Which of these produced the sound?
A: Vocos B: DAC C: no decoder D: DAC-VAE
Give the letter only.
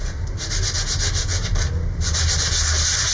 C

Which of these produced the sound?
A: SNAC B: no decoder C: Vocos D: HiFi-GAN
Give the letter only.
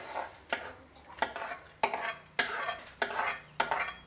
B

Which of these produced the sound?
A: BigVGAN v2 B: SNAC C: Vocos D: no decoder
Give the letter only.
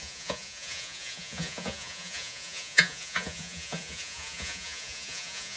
C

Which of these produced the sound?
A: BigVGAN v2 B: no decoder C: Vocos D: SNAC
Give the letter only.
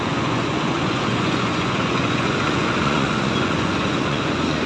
C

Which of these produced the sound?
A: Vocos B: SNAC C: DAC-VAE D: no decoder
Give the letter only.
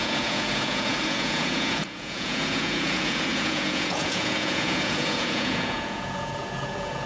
A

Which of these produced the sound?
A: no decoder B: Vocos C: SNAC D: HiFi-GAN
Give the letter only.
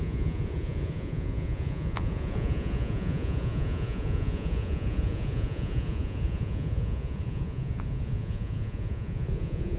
B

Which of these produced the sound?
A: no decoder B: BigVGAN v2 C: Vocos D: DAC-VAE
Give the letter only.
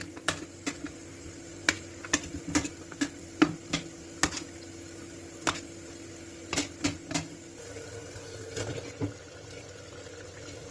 A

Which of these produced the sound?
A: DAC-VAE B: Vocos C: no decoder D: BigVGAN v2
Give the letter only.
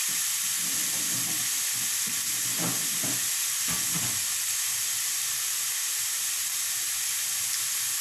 C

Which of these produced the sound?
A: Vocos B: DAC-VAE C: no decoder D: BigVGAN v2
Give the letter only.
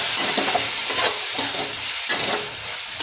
C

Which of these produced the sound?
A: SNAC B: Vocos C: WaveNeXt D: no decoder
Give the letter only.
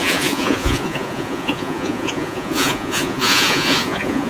B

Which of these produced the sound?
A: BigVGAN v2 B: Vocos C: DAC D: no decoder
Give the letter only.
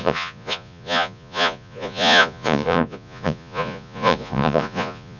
B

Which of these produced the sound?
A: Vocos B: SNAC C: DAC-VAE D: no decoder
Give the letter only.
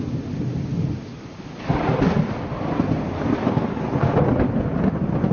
D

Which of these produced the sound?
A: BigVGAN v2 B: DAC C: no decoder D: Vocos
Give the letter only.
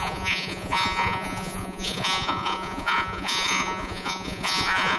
D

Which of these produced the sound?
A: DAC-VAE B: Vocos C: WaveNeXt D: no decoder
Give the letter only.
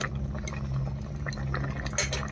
D